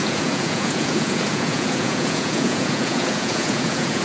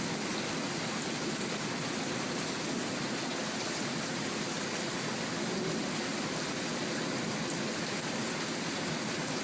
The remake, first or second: first